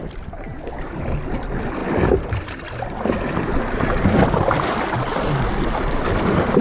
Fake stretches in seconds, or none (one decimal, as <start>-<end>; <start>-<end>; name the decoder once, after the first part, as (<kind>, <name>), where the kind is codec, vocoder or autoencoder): none